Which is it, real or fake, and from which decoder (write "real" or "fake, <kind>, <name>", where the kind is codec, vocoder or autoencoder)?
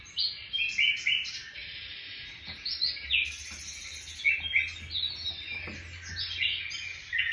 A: real